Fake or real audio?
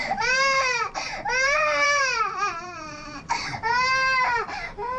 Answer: fake